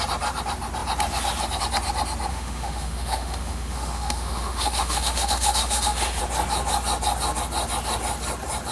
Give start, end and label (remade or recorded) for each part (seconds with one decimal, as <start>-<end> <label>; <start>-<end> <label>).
0.0-2.3 recorded; 2.3-6.2 remade; 6.2-8.7 recorded